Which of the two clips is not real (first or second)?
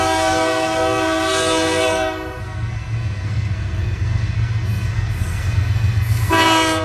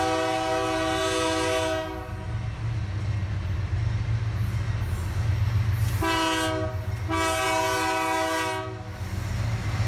first